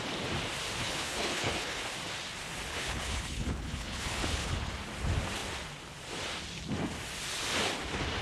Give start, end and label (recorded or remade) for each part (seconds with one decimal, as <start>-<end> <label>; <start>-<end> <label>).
0.0-0.8 recorded; 0.8-1.8 remade; 1.8-2.7 recorded; 2.7-4.7 remade; 4.7-8.2 recorded